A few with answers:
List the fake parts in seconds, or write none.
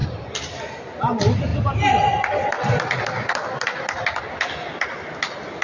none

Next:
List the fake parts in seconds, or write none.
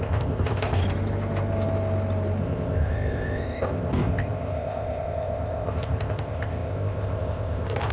0.0-0.8 (codec, ZipCodec); 2.4-7.9